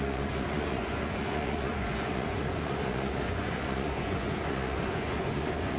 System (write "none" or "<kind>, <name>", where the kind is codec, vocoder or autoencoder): vocoder, Vocos